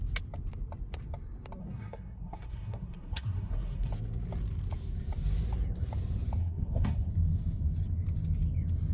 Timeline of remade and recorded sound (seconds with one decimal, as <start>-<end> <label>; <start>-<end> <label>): 0.0-1.6 recorded; 1.6-3.9 remade; 3.9-6.4 recorded; 6.4-7.1 remade; 7.1-8.9 recorded